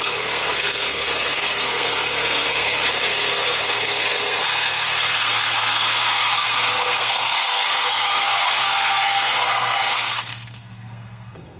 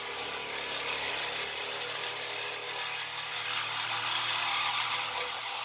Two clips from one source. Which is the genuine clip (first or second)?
second